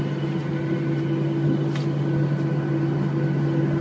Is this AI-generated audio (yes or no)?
no